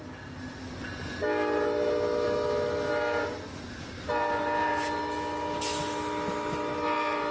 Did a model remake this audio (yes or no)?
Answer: no